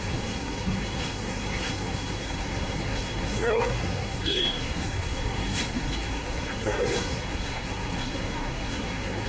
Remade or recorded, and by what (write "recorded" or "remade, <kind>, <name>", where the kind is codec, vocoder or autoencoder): remade, codec, SNAC